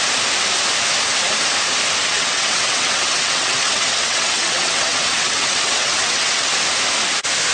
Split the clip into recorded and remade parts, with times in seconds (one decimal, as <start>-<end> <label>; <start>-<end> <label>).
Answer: 0.0-2.0 recorded; 2.0-6.5 remade; 6.5-7.5 recorded